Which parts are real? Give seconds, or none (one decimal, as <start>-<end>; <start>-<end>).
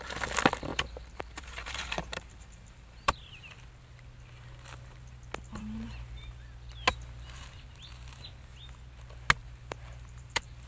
0.0-0.7; 3.5-9.4